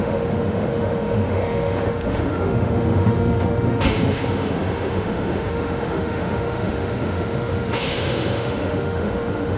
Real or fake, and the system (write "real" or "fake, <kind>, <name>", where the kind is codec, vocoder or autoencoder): fake, autoencoder, DAC-VAE